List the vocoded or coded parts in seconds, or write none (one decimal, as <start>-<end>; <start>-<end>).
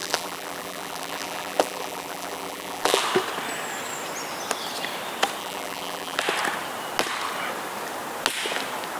0.0-3.0; 5.4-6.2